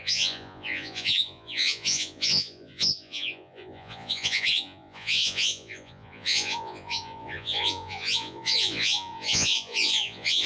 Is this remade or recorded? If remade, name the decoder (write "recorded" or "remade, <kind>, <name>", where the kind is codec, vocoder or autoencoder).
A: remade, vocoder, Vocos